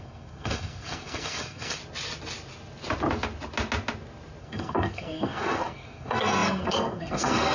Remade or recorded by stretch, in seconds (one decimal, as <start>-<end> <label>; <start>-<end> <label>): 0.0-1.8 remade; 1.8-4.4 recorded; 4.4-7.5 remade